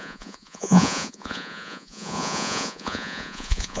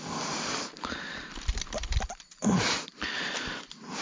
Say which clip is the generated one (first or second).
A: first